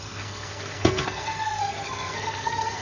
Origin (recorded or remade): remade